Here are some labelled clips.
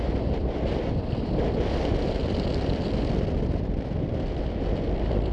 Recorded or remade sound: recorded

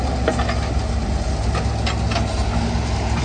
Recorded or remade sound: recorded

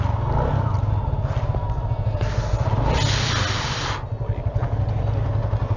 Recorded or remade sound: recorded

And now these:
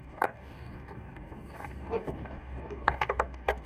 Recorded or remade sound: remade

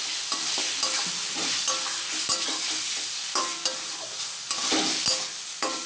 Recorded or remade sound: recorded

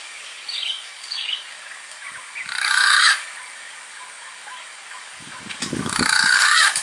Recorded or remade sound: remade